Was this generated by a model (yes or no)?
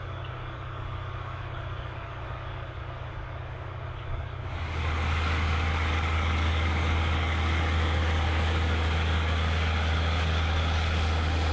yes